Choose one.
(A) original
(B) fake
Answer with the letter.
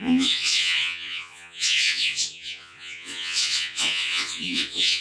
B